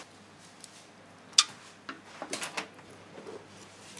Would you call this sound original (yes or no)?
yes